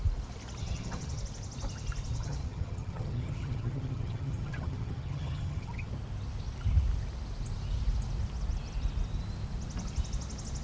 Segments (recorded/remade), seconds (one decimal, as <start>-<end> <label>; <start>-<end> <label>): 0.0-0.6 recorded; 0.6-1.2 remade; 1.2-2.1 recorded; 2.1-5.9 remade; 5.9-10.6 recorded